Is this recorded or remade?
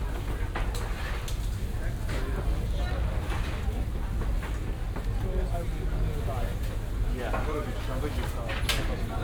recorded